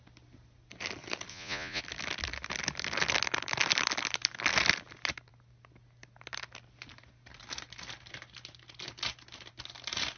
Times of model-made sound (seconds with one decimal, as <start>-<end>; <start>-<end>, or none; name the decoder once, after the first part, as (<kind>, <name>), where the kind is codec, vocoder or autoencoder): 1.3-1.8 (vocoder, Vocos)